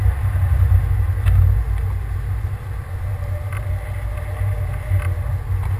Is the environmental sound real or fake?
real